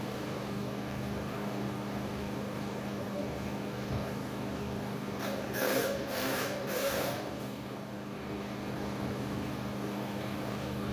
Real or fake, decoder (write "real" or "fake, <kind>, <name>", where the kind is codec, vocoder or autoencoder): fake, codec, DAC